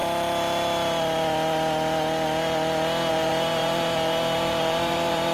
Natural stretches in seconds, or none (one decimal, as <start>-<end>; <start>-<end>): 0.0-3.1